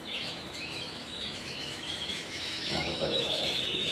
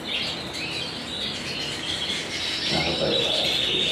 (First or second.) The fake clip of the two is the first